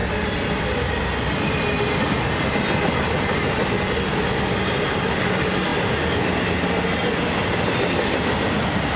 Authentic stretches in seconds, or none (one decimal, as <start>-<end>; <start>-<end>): 0.0-9.0